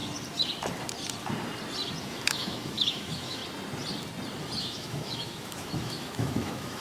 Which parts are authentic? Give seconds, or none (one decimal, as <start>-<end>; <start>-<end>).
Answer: 0.0-2.0; 3.4-4.6